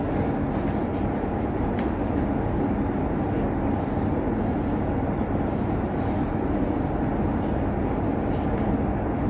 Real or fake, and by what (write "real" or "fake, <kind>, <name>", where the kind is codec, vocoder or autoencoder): real